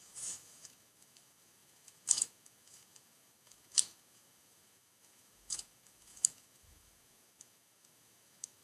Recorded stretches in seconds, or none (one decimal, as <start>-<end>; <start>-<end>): none